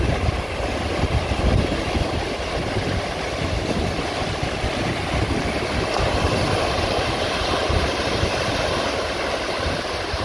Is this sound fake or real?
real